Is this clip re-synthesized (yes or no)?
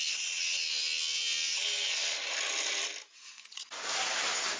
no